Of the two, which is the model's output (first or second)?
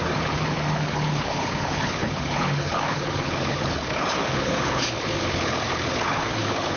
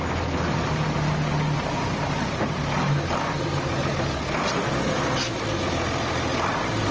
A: first